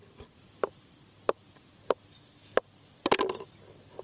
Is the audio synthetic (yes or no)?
no